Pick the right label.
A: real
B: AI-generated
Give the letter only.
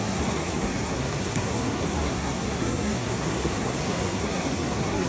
B